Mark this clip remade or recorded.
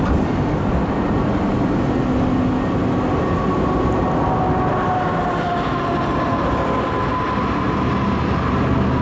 recorded